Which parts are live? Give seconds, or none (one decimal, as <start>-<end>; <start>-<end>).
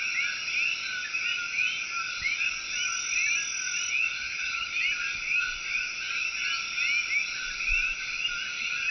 0.0-4.2; 4.7-8.9